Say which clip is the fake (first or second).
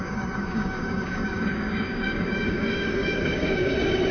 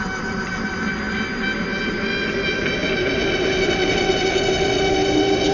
first